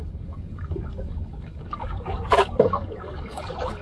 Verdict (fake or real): fake